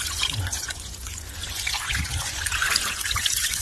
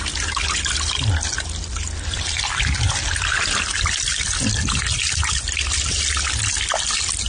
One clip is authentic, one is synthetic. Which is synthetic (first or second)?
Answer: first